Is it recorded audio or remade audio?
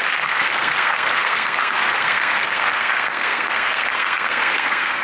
remade